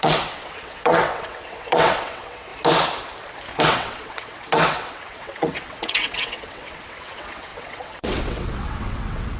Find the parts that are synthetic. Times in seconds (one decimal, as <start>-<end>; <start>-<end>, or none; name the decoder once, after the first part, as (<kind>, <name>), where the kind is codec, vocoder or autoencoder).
0.0-2.5 (vocoder, WaveNeXt); 3.6-9.4